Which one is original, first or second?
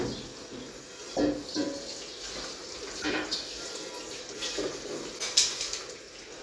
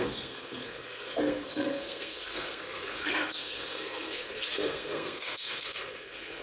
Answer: first